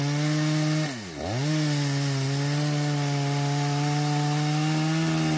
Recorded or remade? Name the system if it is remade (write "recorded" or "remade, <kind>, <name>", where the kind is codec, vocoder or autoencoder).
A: recorded